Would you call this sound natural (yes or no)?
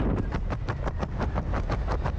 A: yes